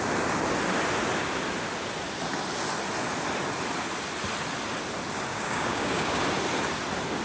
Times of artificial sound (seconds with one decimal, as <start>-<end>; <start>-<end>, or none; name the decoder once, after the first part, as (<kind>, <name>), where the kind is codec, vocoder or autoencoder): 5.3-6.2 (codec, DAC)